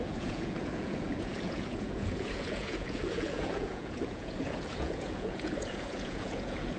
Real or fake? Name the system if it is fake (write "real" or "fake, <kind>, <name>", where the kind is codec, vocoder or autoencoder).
fake, vocoder, Vocos